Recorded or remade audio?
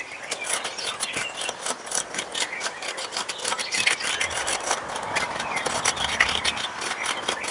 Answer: recorded